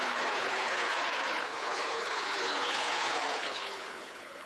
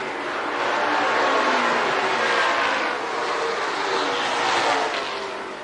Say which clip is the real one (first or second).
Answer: second